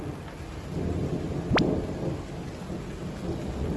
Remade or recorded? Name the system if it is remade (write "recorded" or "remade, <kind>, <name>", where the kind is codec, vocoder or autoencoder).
recorded